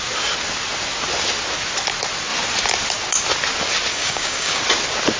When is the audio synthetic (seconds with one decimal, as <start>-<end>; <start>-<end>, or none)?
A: 3.9-4.6